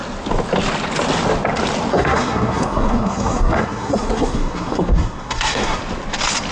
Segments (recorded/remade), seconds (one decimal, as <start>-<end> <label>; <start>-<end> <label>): 0.0-1.9 recorded; 1.9-5.8 remade; 5.8-6.5 recorded